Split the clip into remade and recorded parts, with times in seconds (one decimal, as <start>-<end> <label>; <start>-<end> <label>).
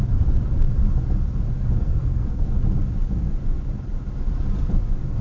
0.0-1.8 recorded; 1.8-2.6 remade; 2.6-5.2 recorded